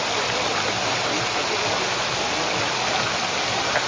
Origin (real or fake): real